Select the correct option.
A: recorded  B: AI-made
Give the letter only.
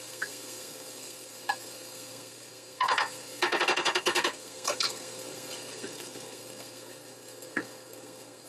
B